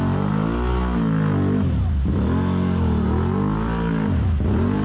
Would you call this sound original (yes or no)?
yes